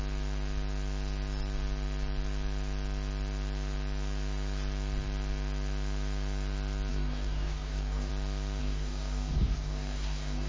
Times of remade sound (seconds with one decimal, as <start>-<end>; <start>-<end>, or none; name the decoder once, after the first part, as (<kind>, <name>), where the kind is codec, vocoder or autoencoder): 6.9-8.1 (codec, DAC); 8.6-10.5